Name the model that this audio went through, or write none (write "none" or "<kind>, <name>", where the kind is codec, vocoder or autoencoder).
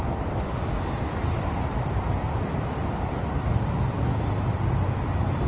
vocoder, BigVGAN v2